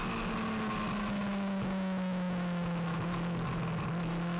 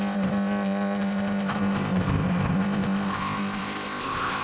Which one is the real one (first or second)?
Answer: first